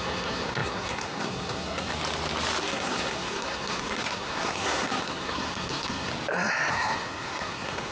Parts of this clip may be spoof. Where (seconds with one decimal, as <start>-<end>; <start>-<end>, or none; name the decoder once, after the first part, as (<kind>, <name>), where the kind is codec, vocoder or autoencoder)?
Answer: 0.0-1.9 (codec, SNAC); 2.6-6.1; 6.7-7.9